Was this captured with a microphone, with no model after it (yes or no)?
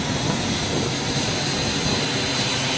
yes